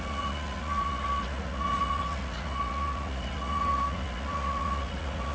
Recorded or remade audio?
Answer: remade